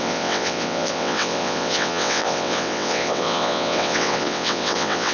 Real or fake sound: fake